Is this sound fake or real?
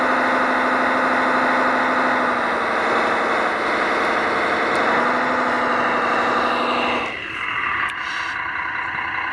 real